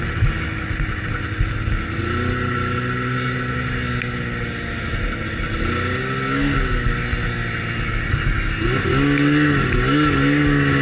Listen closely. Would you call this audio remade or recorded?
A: recorded